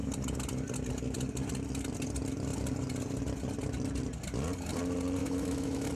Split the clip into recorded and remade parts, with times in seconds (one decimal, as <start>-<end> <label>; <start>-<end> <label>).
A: 0.0-5.2 recorded; 5.2-5.9 remade